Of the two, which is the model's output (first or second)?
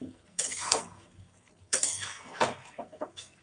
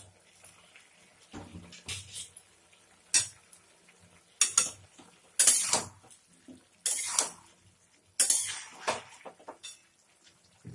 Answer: first